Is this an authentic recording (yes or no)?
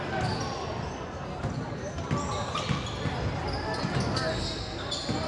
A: yes